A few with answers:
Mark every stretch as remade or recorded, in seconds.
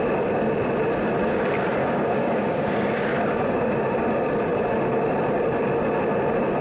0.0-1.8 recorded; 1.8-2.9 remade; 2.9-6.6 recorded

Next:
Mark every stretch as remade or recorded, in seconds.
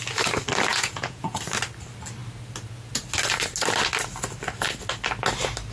0.0-0.7 recorded; 0.7-1.4 remade; 1.4-5.7 recorded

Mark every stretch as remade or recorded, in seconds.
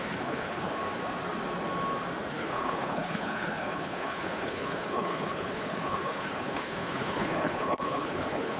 0.0-0.8 remade; 0.8-2.3 recorded; 2.3-8.6 remade